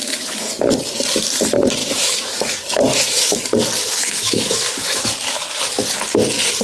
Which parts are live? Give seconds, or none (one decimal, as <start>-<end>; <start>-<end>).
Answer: 0.7-1.8; 3.4-3.8; 5.6-6.6